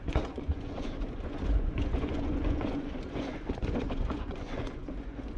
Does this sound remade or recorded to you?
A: remade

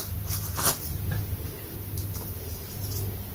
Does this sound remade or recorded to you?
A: recorded